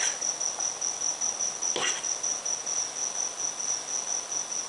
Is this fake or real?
real